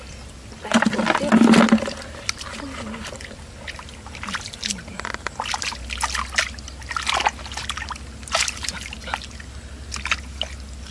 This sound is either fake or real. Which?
real